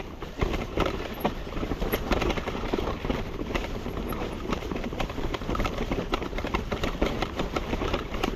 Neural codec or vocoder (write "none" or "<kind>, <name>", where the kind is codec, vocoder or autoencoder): vocoder, BigVGAN v2